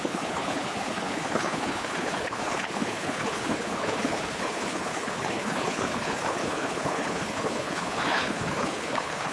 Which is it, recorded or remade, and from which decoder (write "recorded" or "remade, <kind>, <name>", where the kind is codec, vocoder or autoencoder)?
remade, codec, HILCodec